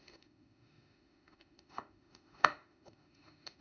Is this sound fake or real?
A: fake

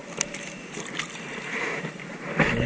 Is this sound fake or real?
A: real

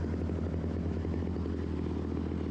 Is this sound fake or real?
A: real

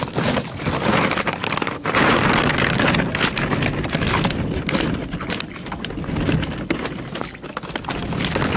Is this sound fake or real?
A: real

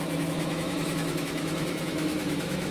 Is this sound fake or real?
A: fake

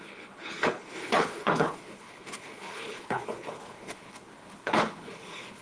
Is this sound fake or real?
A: fake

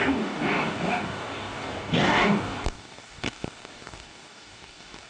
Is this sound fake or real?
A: fake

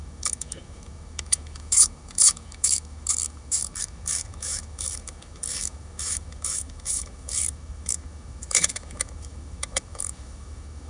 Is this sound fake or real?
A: fake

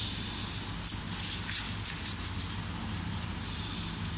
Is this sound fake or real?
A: real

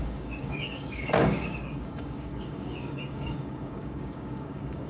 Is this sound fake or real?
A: fake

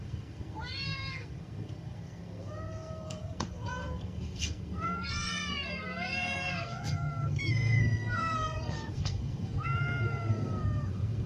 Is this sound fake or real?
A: fake